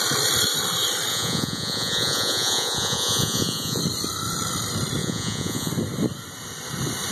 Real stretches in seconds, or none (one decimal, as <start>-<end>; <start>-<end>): 0.0-1.1; 3.8-5.0; 5.7-7.1